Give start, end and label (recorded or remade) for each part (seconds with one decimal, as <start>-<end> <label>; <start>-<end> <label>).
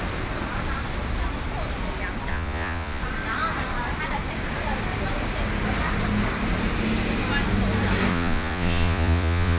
0.0-2.3 recorded; 2.3-3.0 remade; 3.0-8.1 recorded; 8.1-9.6 remade